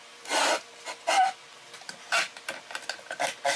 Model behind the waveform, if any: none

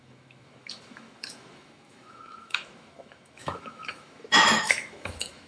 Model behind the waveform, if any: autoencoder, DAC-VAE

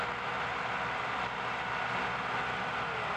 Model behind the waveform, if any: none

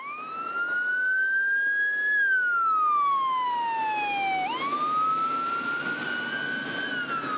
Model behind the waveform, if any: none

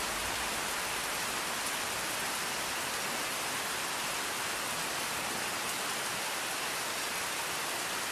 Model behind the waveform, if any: none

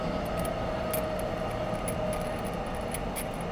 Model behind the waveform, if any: none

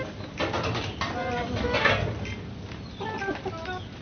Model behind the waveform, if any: none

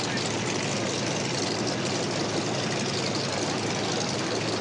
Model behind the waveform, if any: none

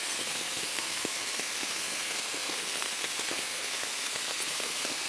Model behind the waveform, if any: codec, SNAC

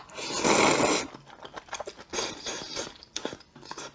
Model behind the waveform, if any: none